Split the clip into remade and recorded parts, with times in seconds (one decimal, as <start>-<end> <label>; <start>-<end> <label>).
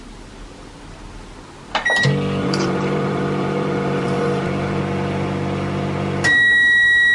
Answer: 0.0-2.4 recorded; 2.4-4.8 remade; 4.8-7.1 recorded